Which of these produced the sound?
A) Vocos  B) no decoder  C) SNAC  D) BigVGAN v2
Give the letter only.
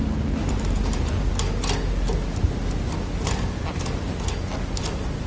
B